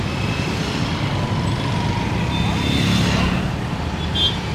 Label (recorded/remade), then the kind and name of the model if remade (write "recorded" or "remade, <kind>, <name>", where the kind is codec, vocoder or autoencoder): recorded